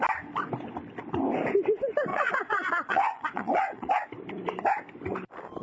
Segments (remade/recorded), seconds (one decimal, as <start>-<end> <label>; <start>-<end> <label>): 0.0-2.1 recorded; 2.1-3.9 remade; 3.9-5.6 recorded